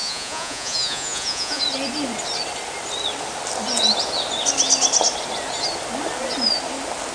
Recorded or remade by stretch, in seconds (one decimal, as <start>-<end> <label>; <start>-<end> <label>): 0.0-1.6 remade; 1.6-7.1 recorded